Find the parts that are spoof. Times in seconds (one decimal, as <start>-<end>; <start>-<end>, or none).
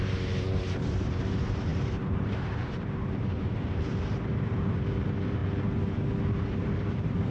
0.0-5.4; 6.3-7.3